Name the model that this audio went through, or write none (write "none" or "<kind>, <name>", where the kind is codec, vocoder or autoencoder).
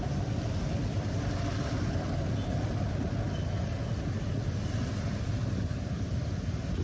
none